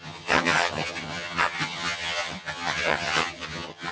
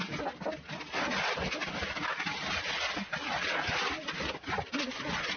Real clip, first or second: second